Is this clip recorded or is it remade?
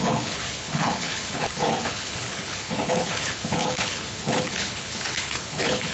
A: remade